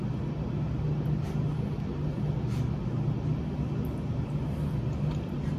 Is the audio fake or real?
real